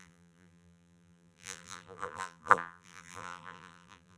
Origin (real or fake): fake